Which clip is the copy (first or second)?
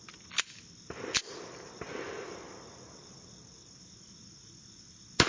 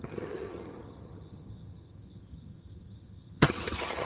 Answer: second